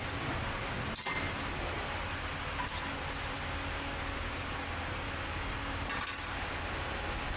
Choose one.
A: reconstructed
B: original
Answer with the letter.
B